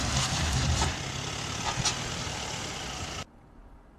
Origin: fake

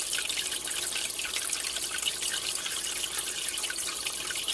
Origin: fake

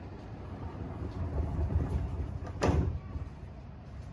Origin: fake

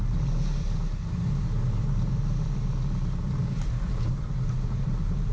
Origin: fake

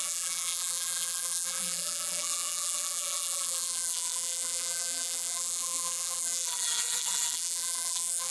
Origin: fake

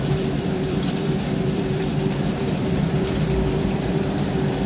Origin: fake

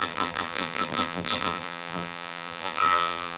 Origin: fake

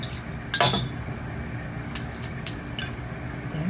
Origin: real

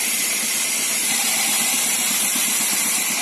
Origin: fake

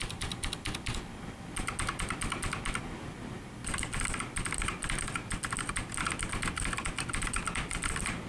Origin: fake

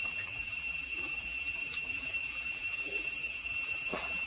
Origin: fake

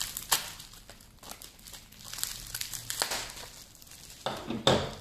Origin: real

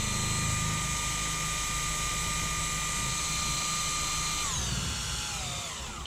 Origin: real